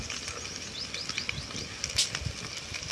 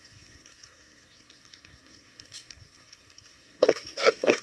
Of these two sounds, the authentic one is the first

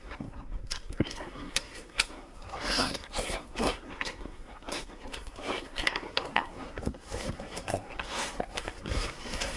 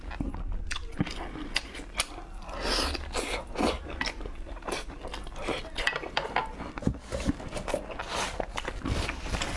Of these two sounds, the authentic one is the second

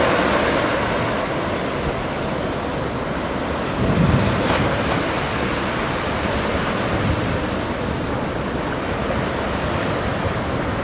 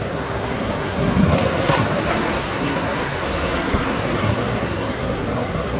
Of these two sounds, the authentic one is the first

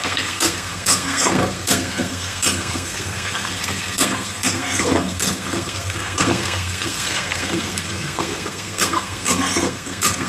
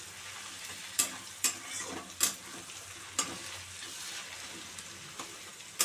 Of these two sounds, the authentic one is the second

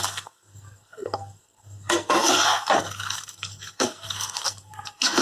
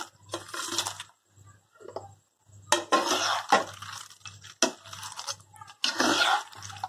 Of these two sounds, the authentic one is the second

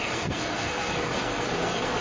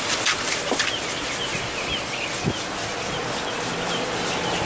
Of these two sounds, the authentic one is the second